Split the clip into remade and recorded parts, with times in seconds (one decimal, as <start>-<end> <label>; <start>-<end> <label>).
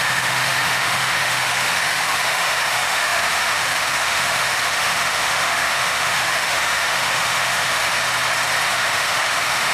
0.0-8.0 remade; 8.0-8.7 recorded; 8.7-9.7 remade